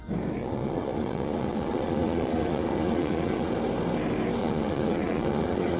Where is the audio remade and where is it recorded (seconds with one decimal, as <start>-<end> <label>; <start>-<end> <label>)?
0.0-0.4 recorded; 0.4-3.5 remade; 3.5-4.4 recorded; 4.4-5.8 remade